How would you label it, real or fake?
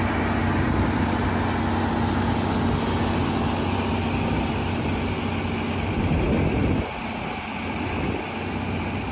real